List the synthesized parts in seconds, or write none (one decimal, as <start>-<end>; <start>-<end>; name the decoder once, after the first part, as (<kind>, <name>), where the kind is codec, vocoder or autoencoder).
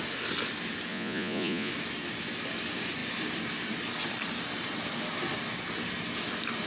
0.9-1.7 (vocoder, Vocos)